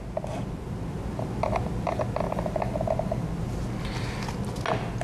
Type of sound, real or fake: real